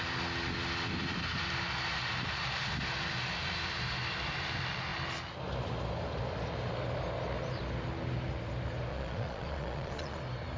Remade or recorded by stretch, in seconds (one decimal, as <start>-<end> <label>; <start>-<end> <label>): 0.0-8.9 recorded; 8.9-10.2 remade; 10.2-10.6 recorded